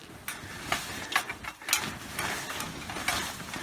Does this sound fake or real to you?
real